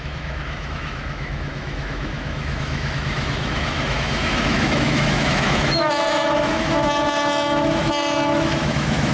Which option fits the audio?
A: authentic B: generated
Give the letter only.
B